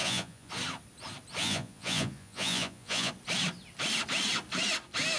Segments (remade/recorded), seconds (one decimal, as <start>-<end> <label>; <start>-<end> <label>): 0.0-0.5 remade; 0.5-1.4 recorded; 1.4-3.1 remade; 3.1-5.2 recorded